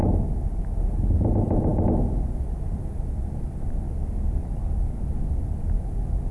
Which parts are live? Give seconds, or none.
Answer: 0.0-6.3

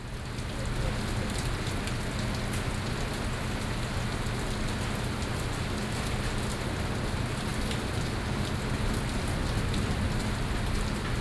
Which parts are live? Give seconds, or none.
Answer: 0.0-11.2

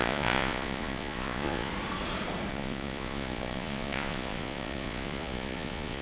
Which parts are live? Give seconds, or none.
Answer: 1.7-2.5

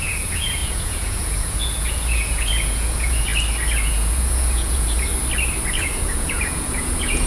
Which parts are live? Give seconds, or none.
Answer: 3.3-3.8; 5.1-5.7

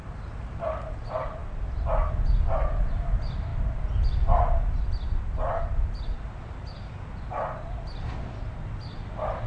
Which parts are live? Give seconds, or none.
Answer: 0.0-9.5

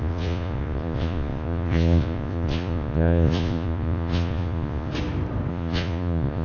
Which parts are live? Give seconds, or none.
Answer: 4.9-5.5

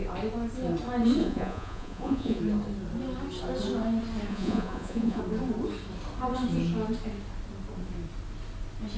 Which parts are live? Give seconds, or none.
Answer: 0.0-1.2; 2.4-4.3; 5.2-9.0